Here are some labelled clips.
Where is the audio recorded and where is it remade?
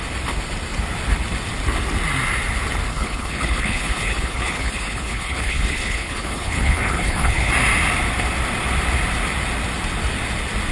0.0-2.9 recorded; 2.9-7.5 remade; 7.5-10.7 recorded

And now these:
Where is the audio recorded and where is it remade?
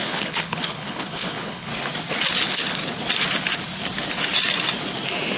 0.0-1.7 remade; 1.7-2.4 recorded; 2.4-2.8 remade; 2.8-5.4 recorded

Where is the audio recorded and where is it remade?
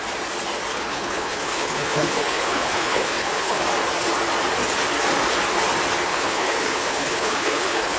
0.0-0.7 recorded; 0.7-3.6 remade; 3.6-6.1 recorded; 6.1-8.0 remade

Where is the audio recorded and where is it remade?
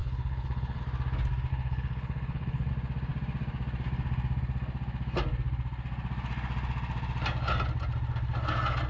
0.0-0.8 remade; 0.8-1.5 recorded; 1.5-2.7 remade; 2.7-8.9 recorded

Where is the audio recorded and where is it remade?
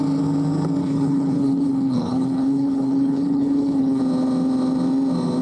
0.0-0.8 recorded; 0.8-4.0 remade; 4.0-5.4 recorded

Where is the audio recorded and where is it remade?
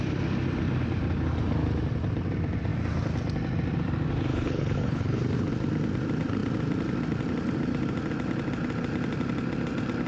0.0-4.3 recorded; 4.3-5.2 remade; 5.2-10.1 recorded